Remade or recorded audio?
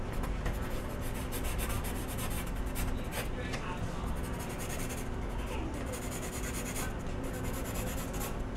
recorded